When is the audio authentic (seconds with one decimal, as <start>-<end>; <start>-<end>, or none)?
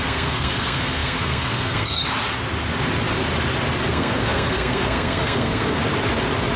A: 2.0-3.9; 5.8-6.6